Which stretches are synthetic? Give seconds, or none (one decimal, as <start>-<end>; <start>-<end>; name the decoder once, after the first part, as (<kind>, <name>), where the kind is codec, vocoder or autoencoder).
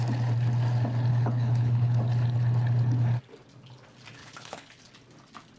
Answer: 1.1-2.0 (codec, HILCodec); 4.2-4.8